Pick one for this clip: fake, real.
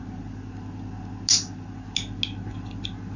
real